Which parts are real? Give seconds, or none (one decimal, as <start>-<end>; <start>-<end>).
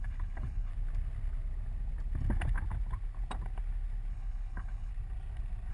0.7-4.1; 4.9-5.7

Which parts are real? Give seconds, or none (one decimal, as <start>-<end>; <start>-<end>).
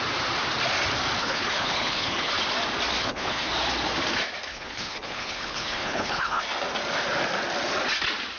0.0-1.2; 2.3-3.0; 3.5-4.5; 6.4-8.4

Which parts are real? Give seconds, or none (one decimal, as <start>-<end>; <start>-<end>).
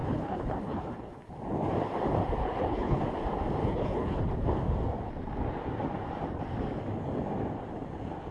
1.3-2.4; 3.0-3.6; 4.2-8.3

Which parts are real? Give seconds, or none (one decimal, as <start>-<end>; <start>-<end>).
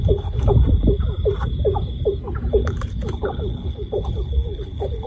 0.5-2.5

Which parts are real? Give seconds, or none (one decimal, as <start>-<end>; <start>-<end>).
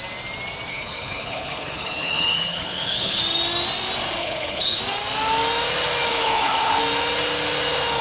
0.0-0.7; 3.2-4.2; 4.8-6.1; 6.8-8.0